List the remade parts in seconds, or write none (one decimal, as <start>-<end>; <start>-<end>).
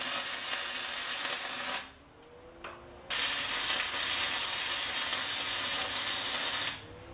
none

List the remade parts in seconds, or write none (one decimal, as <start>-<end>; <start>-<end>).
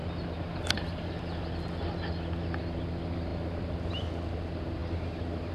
3.3-3.9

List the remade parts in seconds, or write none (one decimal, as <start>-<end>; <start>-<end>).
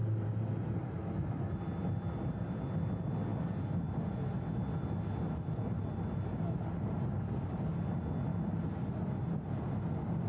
none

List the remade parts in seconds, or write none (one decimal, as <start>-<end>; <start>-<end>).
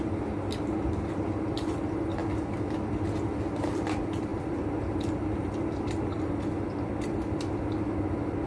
none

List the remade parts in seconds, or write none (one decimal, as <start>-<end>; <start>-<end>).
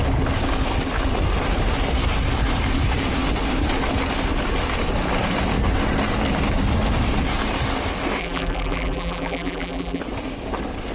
8.2-10.0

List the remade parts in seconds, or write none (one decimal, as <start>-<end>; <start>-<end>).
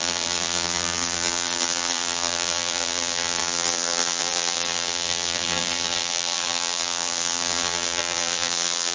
0.0-8.9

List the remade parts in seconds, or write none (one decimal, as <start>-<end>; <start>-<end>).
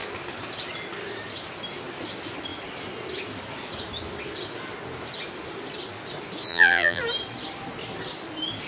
6.5-7.0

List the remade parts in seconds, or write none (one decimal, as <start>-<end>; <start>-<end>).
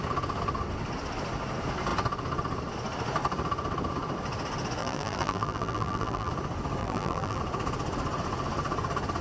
4.8-6.3; 6.8-7.4